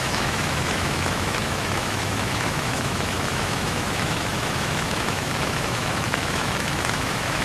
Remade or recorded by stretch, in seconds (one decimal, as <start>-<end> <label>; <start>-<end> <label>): 0.0-7.4 remade